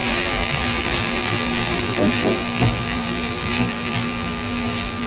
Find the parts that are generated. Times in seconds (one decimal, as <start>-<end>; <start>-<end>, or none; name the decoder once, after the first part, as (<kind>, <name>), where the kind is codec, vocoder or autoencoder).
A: 0.0-5.1 (vocoder, BigVGAN v2)